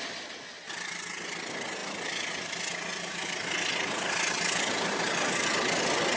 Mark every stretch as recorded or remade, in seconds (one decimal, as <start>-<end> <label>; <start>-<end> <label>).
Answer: 0.0-6.2 recorded